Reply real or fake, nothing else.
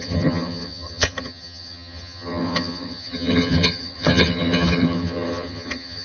fake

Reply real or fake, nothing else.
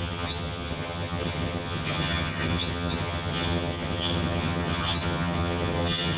fake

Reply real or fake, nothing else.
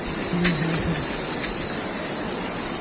real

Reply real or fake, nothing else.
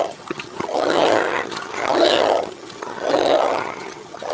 fake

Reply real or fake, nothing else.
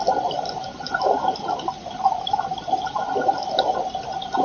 real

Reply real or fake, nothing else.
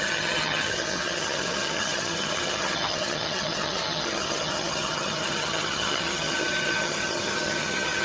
fake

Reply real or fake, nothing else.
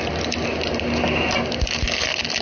real